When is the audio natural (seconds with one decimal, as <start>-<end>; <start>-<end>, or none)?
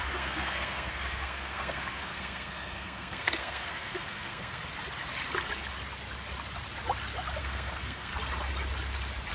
4.6-7.4; 8.1-9.3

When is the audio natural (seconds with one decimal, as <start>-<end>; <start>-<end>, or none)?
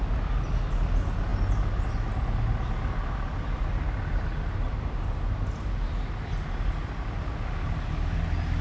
0.0-8.6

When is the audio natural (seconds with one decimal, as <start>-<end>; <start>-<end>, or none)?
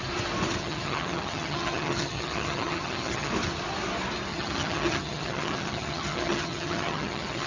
0.0-0.6; 3.3-4.3